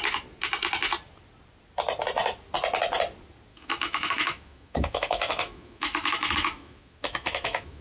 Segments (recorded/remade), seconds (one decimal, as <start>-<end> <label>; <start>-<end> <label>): 0.0-3.5 recorded; 3.5-7.8 remade